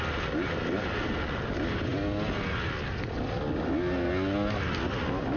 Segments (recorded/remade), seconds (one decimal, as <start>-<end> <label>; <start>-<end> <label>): 0.0-5.4 recorded